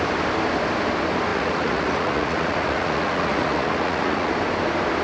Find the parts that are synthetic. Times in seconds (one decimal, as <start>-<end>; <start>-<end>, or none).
1.3-4.3